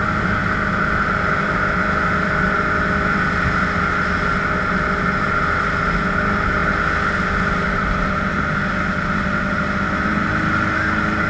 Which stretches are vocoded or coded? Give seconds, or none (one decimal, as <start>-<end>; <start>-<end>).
none